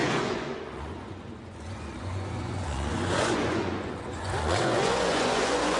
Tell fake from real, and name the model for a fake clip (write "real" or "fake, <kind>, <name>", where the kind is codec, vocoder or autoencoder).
fake, vocoder, Vocos